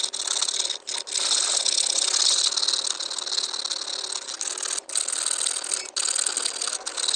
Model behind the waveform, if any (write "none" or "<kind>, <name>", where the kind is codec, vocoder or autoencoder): none